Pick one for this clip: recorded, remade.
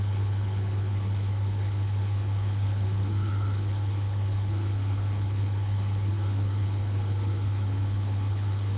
remade